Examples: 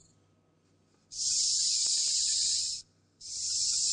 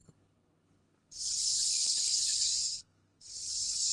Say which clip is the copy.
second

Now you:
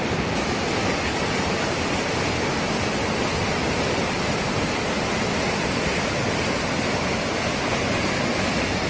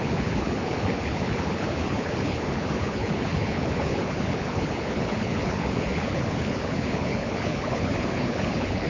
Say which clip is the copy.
second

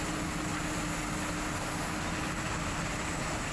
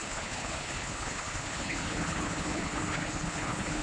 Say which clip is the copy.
second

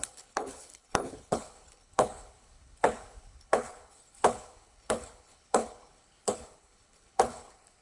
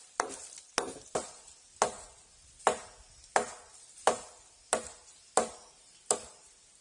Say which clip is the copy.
first